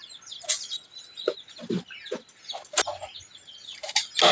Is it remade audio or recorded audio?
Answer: recorded